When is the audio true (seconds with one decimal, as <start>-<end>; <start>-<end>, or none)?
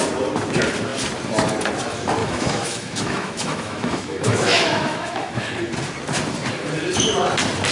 0.0-2.2; 5.5-7.7